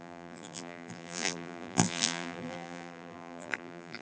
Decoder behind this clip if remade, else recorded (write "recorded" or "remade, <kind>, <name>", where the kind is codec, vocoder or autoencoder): remade, vocoder, BigVGAN v2